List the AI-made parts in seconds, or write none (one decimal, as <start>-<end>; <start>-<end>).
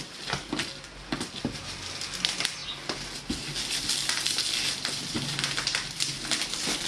none